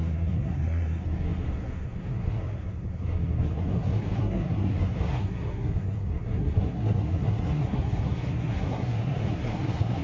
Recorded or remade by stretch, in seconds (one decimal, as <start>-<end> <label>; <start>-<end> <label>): 0.0-10.0 remade